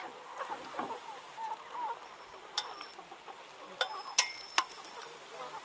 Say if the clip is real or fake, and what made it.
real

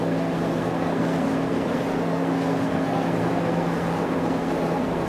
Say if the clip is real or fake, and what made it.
fake, codec, SNAC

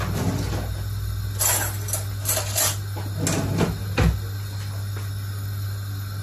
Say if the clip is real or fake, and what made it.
real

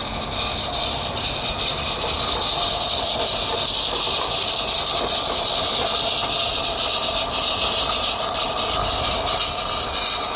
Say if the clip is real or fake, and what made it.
real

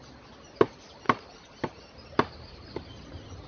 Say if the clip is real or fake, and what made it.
real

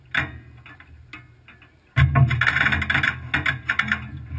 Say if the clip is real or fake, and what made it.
real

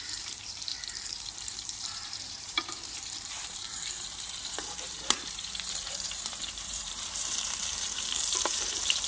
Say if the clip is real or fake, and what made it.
fake, vocoder, BigVGAN v2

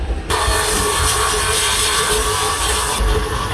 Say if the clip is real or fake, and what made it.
fake, vocoder, BigVGAN v2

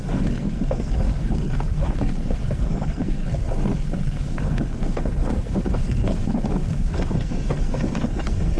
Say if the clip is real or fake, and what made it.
fake, codec, SNAC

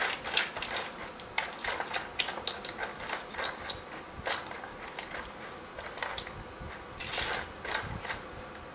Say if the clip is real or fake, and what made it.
real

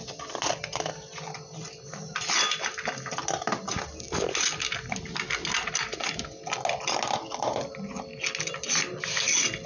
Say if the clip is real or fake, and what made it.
real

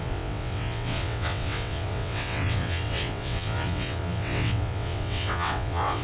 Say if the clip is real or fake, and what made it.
fake, vocoder, WaveNeXt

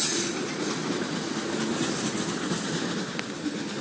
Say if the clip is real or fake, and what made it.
real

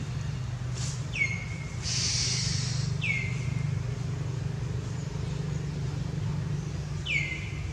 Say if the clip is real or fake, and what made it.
real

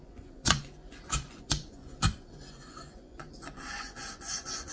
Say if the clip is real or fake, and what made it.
fake, vocoder, Vocos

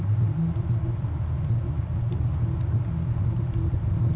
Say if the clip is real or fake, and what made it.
real